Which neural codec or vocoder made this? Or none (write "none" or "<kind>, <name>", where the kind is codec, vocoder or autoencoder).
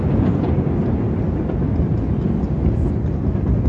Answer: none